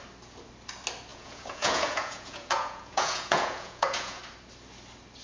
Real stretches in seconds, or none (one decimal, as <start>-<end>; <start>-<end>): 0.0-1.1; 4.2-5.2